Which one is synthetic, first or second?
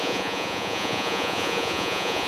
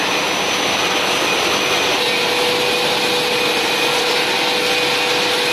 first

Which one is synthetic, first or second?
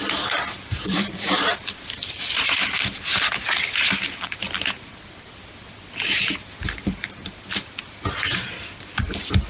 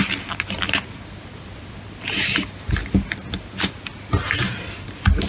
first